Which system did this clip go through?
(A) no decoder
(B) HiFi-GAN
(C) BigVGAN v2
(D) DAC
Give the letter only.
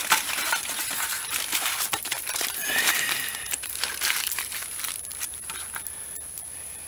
C